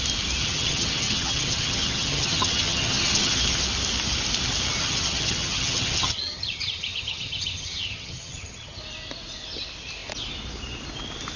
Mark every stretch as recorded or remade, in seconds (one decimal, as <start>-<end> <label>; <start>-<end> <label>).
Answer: 0.0-0.4 recorded; 0.4-3.4 remade; 3.4-4.8 recorded; 4.8-8.8 remade; 8.8-11.4 recorded